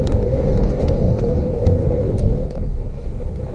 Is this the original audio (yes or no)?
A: no